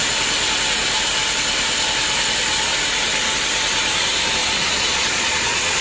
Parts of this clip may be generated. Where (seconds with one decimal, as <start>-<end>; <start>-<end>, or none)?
4.4-5.8